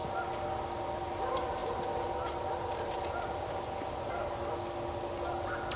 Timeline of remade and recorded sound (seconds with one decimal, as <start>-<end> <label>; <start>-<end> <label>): 0.0-5.8 recorded